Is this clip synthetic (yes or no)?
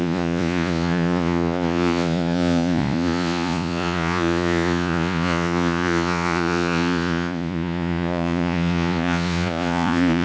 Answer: yes